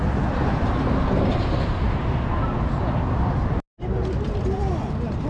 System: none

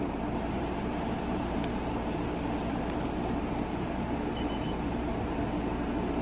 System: vocoder, BigVGAN v2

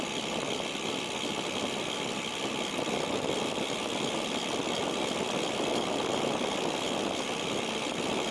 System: none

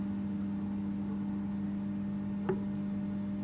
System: none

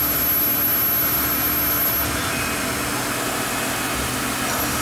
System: none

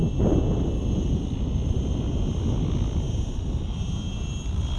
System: none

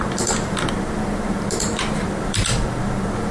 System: vocoder, BigVGAN v2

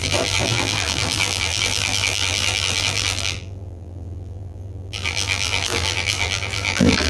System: vocoder, BigVGAN v2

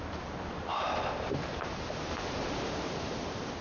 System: vocoder, BigVGAN v2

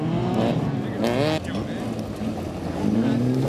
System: none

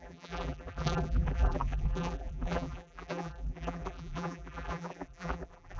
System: vocoder, BigVGAN v2